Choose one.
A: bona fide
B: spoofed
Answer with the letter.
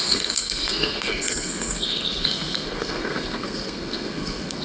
B